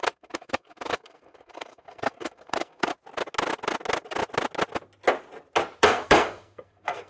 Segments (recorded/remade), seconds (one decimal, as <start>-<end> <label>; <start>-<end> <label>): 0.0-2.9 remade; 2.9-5.8 recorded; 5.8-7.1 remade